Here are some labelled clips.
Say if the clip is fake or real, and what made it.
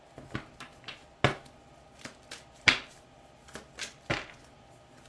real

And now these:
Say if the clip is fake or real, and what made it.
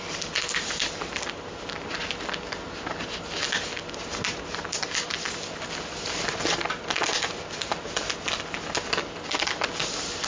real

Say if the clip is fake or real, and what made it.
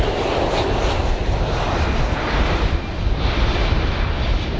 real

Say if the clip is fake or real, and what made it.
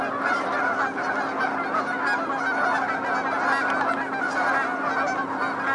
real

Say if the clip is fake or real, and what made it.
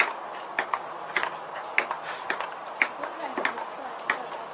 real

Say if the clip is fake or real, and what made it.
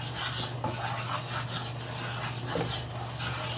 real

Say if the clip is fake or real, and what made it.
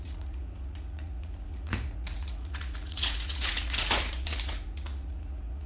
fake, vocoder, Vocos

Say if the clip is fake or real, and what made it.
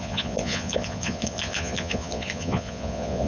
fake, vocoder, Vocos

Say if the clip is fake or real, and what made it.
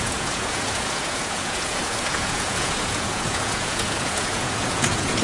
fake, vocoder, Vocos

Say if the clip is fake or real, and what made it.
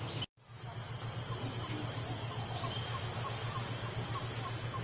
real